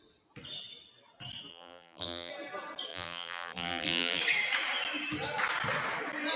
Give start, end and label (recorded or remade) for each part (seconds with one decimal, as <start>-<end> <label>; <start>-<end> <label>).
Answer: 0.0-1.5 recorded; 1.5-2.3 remade; 2.3-2.9 recorded; 2.9-4.2 remade; 4.2-6.4 recorded